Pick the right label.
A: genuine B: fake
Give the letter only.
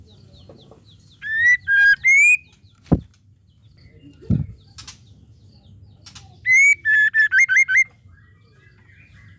A